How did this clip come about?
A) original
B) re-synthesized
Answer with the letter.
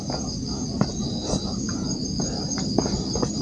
A